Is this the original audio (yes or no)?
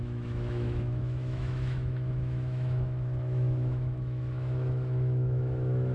no